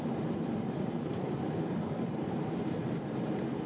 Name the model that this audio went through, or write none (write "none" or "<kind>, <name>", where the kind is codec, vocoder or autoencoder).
vocoder, BigVGAN v2